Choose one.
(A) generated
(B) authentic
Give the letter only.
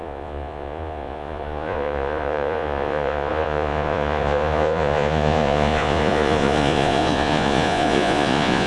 A